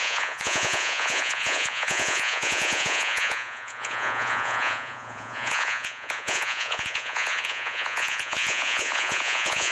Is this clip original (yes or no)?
no